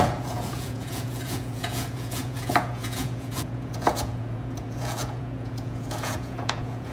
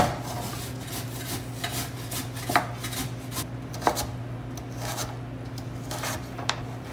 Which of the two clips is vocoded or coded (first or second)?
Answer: first